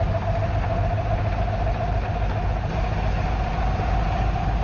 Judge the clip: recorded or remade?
recorded